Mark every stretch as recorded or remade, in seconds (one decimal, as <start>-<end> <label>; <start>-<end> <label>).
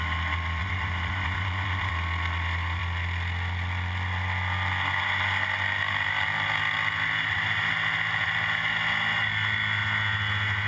0.0-0.6 recorded; 0.6-1.9 remade; 1.9-10.7 recorded